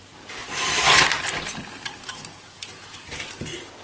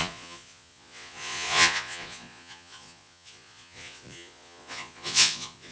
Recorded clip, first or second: first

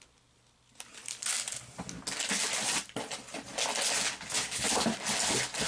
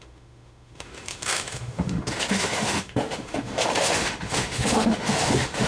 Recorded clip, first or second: first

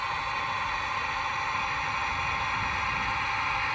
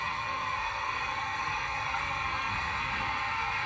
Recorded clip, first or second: first